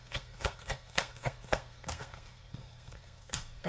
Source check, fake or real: fake